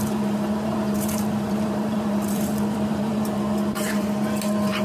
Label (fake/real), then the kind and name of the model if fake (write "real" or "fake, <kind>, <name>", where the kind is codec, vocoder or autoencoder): fake, vocoder, BigVGAN v2